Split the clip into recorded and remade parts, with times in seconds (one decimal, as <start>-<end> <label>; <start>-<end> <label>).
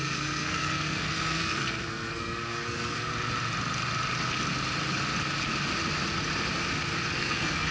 0.0-3.1 remade; 3.1-7.1 recorded; 7.1-7.7 remade